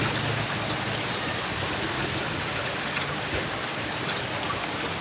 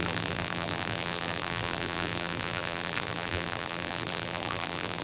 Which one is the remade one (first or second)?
second